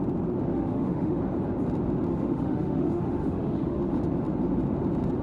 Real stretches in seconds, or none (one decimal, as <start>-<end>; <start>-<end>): 0.0-0.5; 1.2-2.1; 4.0-5.2

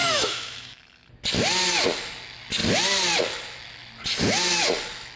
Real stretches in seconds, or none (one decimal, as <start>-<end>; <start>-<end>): 0.8-5.2

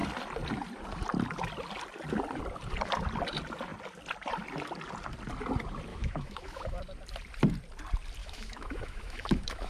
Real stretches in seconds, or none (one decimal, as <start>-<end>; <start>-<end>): 0.0-5.9; 6.8-8.2